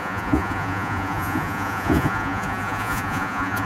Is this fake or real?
fake